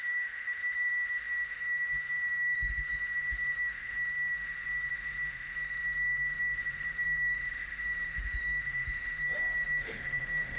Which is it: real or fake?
fake